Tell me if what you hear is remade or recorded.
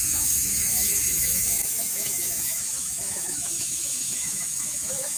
remade